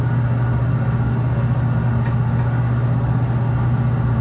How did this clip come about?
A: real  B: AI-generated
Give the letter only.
A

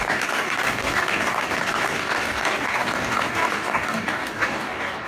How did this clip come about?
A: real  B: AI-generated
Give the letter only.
B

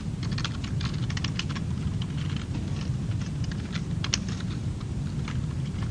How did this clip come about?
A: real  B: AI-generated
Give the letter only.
A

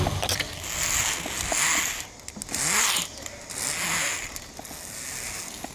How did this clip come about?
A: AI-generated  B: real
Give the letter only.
B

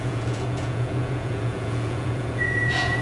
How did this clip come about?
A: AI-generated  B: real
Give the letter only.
A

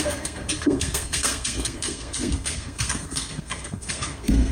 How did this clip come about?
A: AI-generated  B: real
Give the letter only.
A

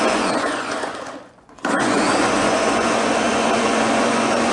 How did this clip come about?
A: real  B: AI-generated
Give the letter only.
B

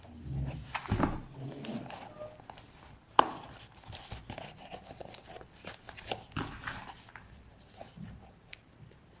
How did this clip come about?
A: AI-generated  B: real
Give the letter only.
B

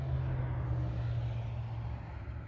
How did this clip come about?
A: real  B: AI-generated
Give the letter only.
A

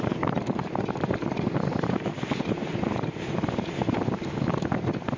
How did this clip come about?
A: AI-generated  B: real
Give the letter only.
A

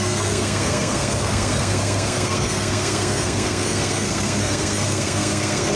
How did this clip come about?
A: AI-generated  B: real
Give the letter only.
A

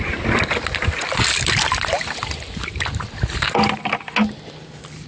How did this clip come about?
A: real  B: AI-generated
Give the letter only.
A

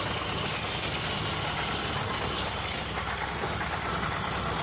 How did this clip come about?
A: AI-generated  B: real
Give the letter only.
B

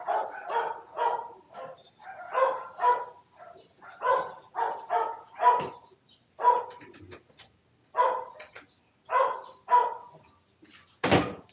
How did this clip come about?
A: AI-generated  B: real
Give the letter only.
B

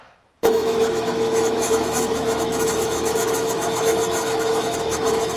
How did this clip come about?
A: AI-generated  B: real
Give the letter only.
A